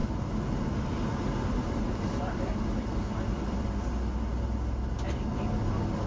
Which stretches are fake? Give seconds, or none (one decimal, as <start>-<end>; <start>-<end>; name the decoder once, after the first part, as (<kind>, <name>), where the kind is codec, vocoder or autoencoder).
0.0-3.7 (vocoder, BigVGAN v2)

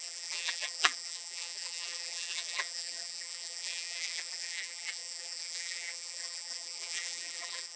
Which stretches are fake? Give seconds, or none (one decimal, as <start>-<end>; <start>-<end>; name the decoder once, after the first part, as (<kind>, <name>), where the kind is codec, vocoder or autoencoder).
0.0-7.8 (vocoder, BigVGAN v2)

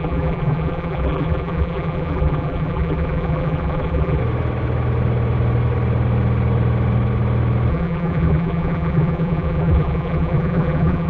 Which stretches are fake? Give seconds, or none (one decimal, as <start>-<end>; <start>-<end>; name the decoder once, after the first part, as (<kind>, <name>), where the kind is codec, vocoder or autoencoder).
0.0-4.2 (vocoder, BigVGAN v2); 7.7-11.1

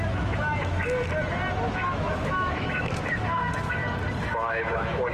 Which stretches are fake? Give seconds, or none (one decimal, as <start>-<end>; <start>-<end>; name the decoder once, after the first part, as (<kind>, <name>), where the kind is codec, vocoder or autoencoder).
0.0-0.8 (autoencoder, DAC-VAE); 1.7-3.8; 4.3-5.1

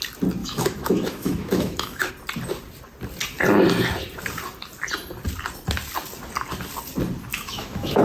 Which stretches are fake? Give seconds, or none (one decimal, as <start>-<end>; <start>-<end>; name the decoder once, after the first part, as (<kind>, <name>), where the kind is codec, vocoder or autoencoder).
0.4-2.1 (autoencoder, DAC-VAE); 7.3-8.0